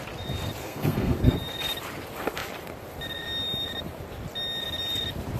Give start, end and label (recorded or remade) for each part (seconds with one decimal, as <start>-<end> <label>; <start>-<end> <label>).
0.0-0.6 recorded; 0.6-1.4 remade; 1.4-5.4 recorded